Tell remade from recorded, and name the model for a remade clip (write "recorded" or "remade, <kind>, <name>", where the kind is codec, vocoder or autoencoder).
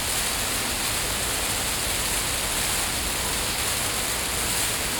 recorded